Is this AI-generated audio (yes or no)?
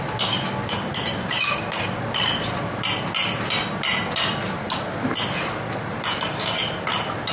no